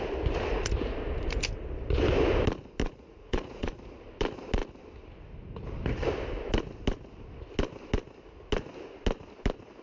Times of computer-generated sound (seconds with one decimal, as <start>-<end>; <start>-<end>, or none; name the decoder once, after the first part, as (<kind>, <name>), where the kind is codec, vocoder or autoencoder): 2.8-3.7 (vocoder, Vocos)